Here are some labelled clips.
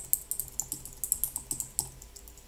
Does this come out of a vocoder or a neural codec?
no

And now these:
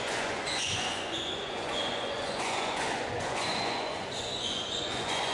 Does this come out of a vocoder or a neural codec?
yes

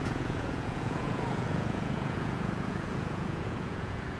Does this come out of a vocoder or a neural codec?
yes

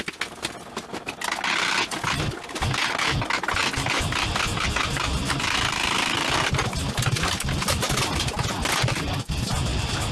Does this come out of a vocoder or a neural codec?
no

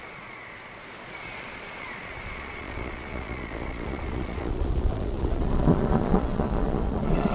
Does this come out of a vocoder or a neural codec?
yes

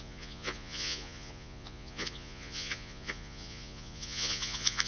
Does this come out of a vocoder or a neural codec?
yes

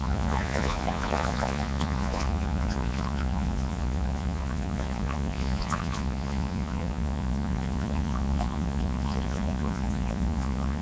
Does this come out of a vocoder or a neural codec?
yes